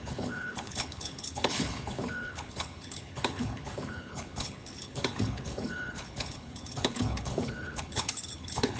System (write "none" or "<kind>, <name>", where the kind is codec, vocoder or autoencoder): codec, HILCodec